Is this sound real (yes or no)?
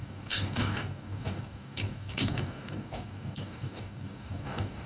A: no